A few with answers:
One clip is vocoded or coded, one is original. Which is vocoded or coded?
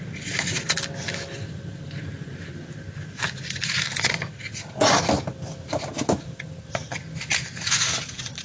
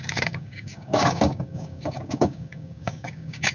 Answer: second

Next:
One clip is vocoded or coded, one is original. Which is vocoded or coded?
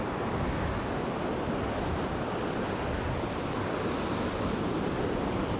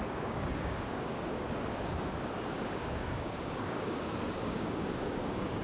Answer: second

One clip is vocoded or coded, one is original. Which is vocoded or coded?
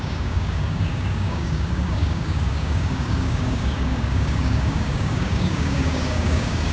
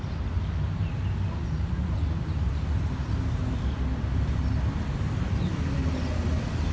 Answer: first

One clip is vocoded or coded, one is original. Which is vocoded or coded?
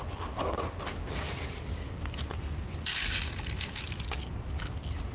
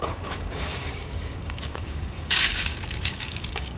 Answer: second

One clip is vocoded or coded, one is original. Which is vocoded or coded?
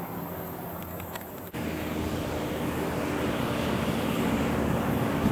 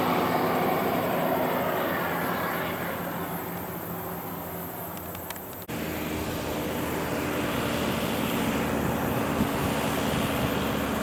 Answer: first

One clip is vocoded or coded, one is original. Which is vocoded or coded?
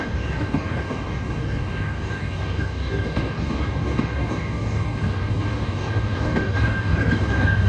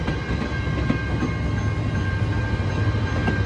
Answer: first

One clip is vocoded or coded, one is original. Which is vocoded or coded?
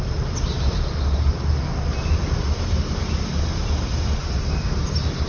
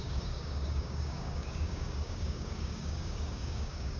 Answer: second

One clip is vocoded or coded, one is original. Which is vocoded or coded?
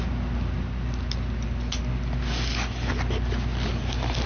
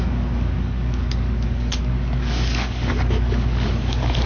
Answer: second